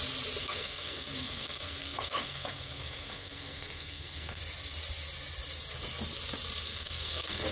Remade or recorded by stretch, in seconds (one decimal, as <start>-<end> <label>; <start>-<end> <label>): 0.0-0.4 recorded; 0.4-4.4 remade; 4.4-6.7 recorded; 6.7-7.5 remade